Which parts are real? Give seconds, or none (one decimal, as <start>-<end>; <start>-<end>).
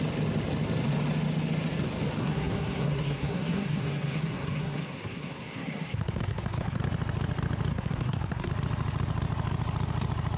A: 0.0-2.2; 6.8-7.7; 8.5-10.4